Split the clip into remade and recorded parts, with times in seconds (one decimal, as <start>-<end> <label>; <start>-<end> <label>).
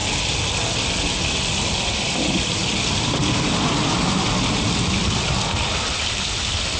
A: 0.0-6.8 recorded